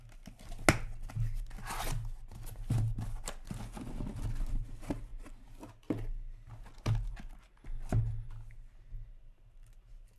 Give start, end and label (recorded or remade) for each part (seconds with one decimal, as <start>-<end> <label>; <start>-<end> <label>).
0.0-10.2 recorded